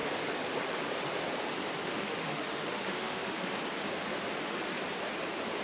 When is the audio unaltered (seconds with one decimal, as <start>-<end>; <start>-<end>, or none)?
0.0-1.8; 3.6-5.6

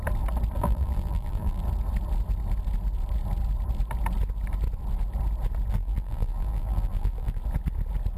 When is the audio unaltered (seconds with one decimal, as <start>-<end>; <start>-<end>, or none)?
0.0-0.6; 1.6-5.7; 7.4-8.2

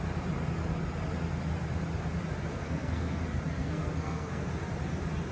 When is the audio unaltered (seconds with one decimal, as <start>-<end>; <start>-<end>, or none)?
0.0-2.5; 3.2-3.6; 4.5-5.3

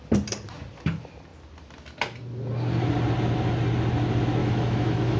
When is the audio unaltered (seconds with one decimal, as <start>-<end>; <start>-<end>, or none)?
0.0-4.4

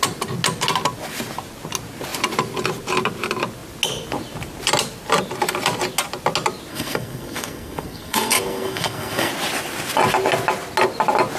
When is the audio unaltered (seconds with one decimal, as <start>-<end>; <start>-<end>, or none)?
0.0-6.7; 9.3-11.4